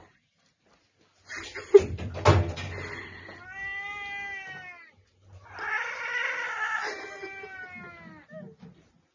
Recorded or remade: recorded